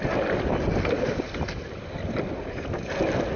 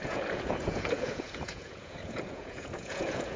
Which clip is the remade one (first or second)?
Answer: second